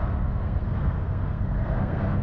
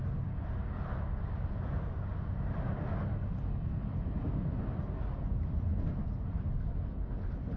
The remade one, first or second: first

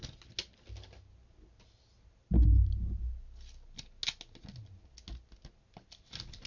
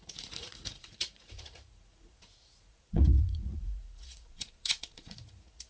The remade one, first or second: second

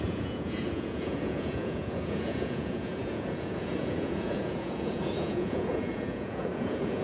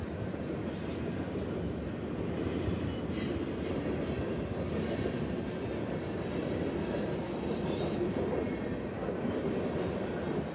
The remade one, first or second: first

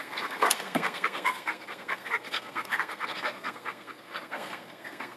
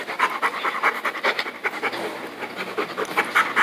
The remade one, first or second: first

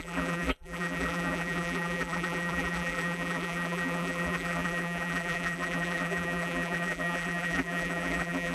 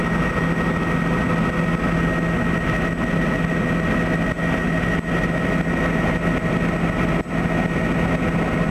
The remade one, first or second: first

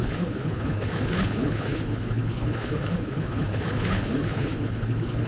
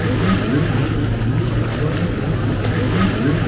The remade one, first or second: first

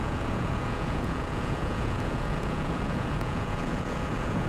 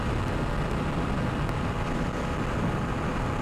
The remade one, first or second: first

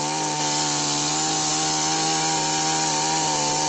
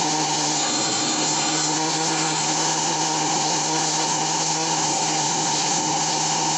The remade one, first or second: second